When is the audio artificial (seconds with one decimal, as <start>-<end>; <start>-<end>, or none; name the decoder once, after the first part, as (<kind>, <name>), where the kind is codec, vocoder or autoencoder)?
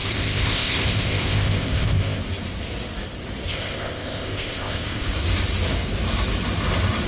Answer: 0.0-2.2 (codec, ZipCodec); 3.5-5.1